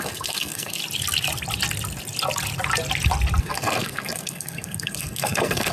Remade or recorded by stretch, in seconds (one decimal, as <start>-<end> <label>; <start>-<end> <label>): 0.0-0.8 remade; 0.8-3.4 recorded; 3.4-5.7 remade